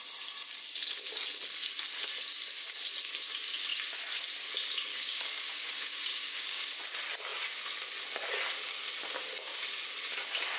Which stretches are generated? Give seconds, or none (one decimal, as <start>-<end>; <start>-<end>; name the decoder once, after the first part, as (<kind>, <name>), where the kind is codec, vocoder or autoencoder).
4.9-6.7 (codec, DAC)